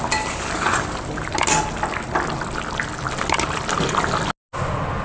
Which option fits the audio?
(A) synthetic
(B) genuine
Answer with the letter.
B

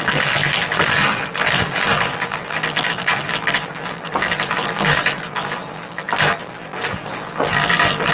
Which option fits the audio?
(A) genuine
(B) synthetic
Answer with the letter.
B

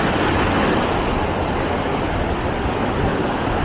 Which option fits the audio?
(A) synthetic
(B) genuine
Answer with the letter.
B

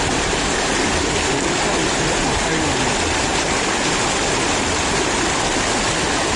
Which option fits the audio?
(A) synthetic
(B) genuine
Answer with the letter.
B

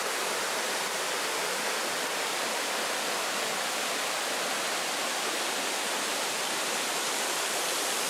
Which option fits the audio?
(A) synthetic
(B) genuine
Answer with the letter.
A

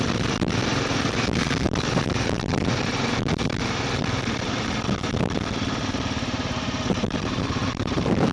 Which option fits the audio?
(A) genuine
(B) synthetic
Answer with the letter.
B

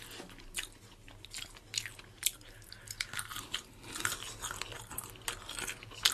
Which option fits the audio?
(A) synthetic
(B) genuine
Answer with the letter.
B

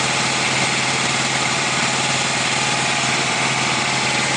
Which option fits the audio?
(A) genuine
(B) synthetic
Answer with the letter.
B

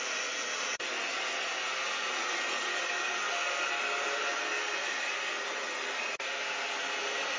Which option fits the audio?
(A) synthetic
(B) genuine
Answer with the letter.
B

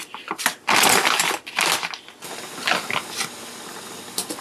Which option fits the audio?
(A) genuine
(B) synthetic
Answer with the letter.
B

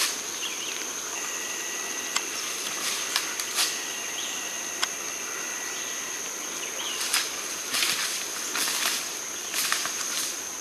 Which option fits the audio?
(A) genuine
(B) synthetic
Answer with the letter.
B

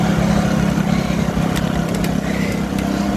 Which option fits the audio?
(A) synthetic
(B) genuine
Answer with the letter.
B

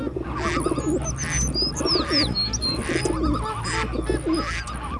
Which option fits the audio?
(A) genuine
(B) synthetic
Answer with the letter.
A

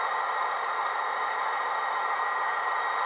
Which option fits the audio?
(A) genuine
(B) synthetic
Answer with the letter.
B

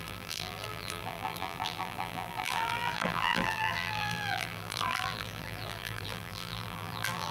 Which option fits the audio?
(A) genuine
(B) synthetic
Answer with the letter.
B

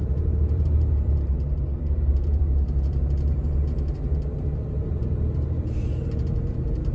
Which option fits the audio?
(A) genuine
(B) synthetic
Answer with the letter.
B